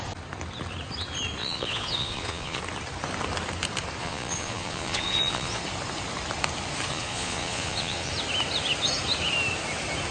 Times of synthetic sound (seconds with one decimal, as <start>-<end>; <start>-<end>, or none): 1.4-2.6; 4.0-5.6; 6.9-8.1